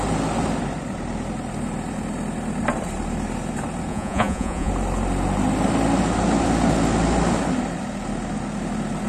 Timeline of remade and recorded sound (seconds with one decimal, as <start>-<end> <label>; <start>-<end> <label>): 0.0-3.9 recorded; 3.9-4.7 remade; 4.7-9.1 recorded